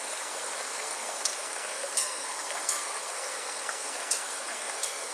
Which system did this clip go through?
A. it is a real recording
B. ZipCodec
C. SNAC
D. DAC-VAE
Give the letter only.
C